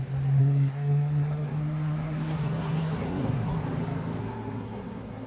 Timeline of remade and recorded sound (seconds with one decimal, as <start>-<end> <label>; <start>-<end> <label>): 0.0-0.4 recorded; 0.4-3.6 remade; 3.6-4.2 recorded; 4.2-5.3 remade